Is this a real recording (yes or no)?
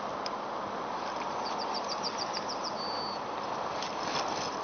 yes